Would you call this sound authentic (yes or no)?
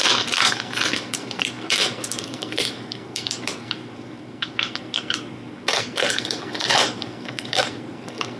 no